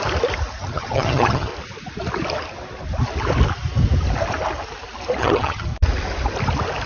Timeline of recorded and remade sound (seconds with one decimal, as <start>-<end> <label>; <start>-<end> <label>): 0.0-0.6 recorded; 0.6-1.5 remade; 1.5-5.2 recorded; 5.2-5.7 remade; 5.7-6.9 recorded